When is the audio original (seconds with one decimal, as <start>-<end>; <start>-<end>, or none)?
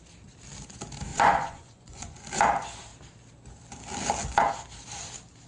0.0-1.1; 2.2-5.5